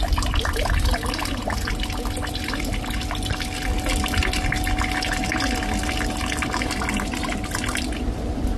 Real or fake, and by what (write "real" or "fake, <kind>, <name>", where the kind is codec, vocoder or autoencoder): real